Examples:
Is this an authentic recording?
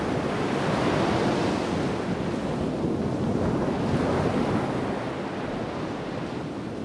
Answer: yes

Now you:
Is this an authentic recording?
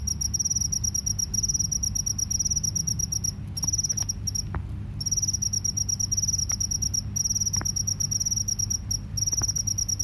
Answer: yes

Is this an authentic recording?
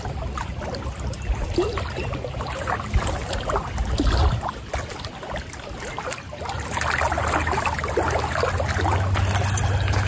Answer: yes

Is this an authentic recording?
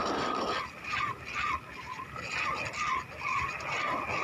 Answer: yes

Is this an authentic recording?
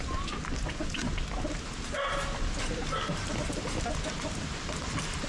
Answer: yes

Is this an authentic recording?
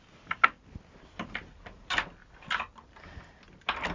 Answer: yes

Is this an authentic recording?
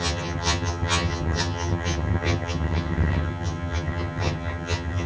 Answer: no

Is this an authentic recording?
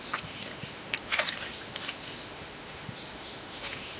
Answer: no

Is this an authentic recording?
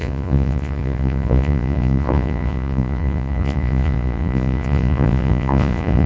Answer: no